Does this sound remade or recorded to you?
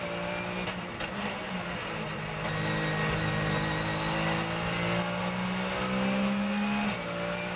recorded